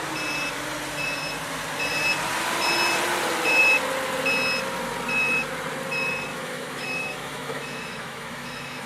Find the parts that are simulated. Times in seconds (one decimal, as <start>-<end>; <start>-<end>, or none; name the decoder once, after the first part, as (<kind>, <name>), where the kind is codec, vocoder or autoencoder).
6.3-8.9 (autoencoder, DAC-VAE)

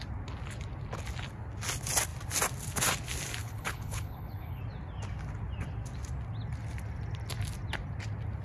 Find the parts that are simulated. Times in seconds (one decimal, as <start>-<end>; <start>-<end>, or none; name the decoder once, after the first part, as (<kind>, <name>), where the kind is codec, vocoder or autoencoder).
3.4-4.6 (codec, HILCodec)

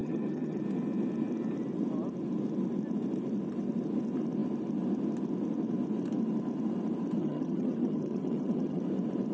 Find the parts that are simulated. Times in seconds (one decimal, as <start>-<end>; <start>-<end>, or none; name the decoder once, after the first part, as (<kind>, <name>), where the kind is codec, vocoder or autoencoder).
0.0-0.6 (vocoder, HiFi-GAN); 7.2-8.8

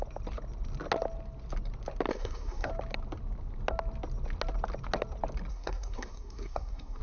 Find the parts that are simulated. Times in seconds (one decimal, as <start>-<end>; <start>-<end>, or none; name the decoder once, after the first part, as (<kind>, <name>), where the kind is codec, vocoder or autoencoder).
2.1-2.7 (codec, SNAC); 5.5-7.0

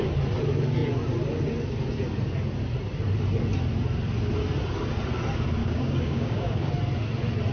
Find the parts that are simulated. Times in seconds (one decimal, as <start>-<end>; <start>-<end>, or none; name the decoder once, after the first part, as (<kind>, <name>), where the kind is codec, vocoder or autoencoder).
5.6-6.7 (codec, DAC)

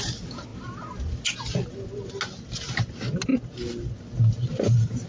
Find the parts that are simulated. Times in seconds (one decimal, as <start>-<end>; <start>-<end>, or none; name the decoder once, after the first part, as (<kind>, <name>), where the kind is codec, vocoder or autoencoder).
none

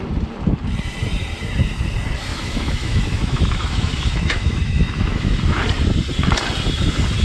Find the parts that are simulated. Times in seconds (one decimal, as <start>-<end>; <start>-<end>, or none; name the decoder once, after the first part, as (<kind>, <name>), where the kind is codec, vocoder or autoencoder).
2.3-5.4 (autoencoder, DAC-VAE)

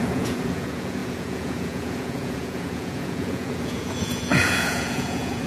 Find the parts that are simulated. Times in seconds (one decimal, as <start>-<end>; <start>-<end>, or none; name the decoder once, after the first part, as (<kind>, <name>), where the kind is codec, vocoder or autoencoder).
0.0-5.5 (vocoder, Vocos)